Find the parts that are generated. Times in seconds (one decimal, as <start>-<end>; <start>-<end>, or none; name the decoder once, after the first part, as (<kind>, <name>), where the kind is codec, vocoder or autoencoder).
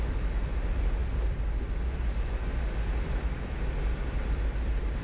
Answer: none